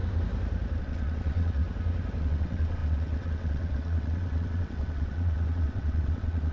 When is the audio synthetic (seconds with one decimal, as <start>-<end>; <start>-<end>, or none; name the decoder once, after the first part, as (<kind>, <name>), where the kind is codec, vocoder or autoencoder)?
0.8-1.6 (vocoder, WaveNeXt); 2.2-6.5